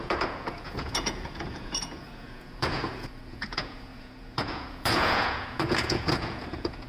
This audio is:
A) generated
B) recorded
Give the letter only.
A